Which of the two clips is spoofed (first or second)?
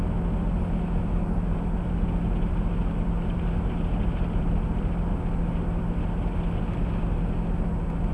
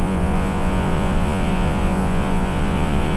second